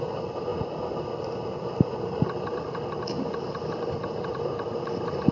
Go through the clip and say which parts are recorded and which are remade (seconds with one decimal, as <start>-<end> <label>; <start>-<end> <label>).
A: 0.0-5.3 recorded